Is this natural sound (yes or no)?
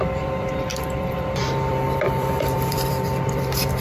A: no